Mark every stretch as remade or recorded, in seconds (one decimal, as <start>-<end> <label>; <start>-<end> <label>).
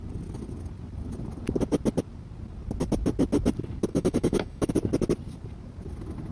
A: 0.0-3.9 recorded; 3.9-4.7 remade; 4.7-6.3 recorded